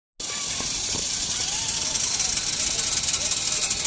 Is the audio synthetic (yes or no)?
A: no